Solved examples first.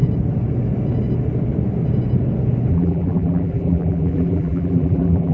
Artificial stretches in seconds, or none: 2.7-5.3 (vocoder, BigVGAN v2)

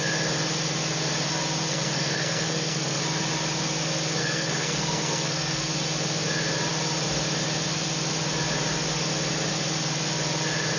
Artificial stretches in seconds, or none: 1.7-3.0 (codec, SNAC); 4.2-5.7

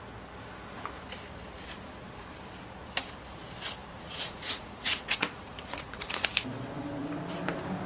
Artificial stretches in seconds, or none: 3.8-6.3 (vocoder, Vocos)

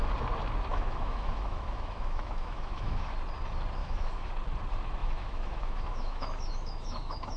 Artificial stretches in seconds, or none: 0.7-3.1 (autoencoder, DAC-VAE); 3.8-4.3; 5.0-7.4

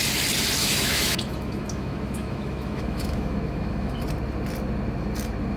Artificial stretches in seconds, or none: 0.6-4.0 (autoencoder, DAC-VAE)

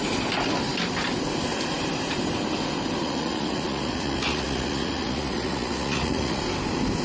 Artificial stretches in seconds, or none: 3.0-6.4 (vocoder, Vocos)

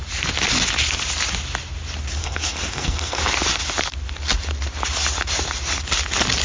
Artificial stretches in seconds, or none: 2.2-3.2 (codec, SNAC)